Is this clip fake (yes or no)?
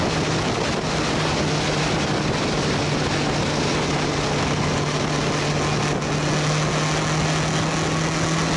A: no